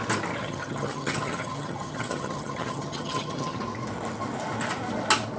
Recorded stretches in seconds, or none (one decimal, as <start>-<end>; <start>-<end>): 0.0-0.4; 3.6-5.4